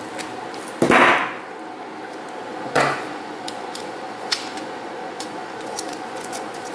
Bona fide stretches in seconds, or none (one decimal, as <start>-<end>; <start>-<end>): 0.0-2.5